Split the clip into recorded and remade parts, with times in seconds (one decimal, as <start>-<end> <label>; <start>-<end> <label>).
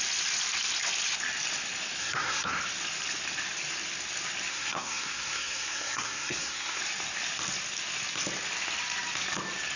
0.0-2.0 recorded; 2.0-2.6 remade; 2.6-4.5 recorded; 4.5-6.8 remade; 6.8-9.8 recorded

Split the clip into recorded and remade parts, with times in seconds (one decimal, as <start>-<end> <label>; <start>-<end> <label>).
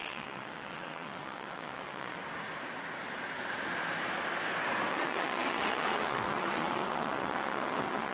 0.0-2.2 remade; 2.2-4.9 recorded; 4.9-8.1 remade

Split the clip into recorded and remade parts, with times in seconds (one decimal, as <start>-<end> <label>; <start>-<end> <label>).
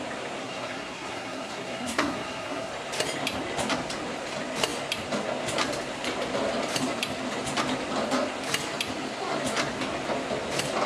0.0-0.4 recorded; 0.4-2.7 remade; 2.7-10.9 recorded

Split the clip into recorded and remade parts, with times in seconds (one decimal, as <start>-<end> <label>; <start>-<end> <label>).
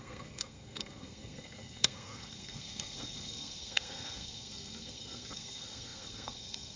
0.0-6.8 remade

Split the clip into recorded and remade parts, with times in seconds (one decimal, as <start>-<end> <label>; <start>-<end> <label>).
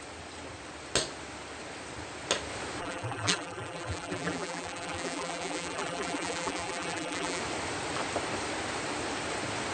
0.0-2.8 recorded; 2.8-7.4 remade; 7.4-9.7 recorded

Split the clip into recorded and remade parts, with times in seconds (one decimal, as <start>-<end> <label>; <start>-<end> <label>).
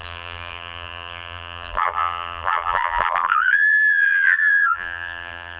0.0-5.6 remade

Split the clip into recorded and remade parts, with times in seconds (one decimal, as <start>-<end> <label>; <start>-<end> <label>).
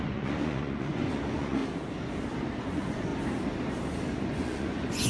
0.0-1.6 remade; 1.6-2.6 recorded; 2.6-3.1 remade; 3.1-4.2 recorded; 4.2-5.1 remade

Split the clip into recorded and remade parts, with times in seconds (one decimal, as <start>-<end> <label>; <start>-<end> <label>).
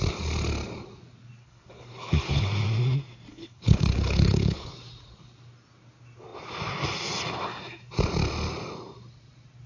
0.0-1.4 recorded; 1.4-2.5 remade; 2.5-3.3 recorded; 3.3-4.7 remade; 4.7-9.7 recorded